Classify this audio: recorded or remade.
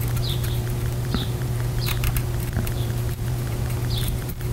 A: remade